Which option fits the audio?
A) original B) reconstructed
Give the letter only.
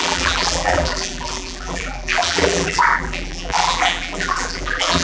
B